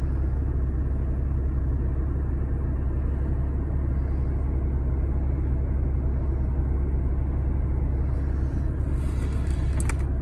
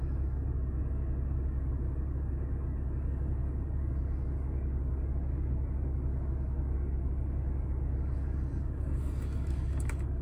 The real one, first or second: first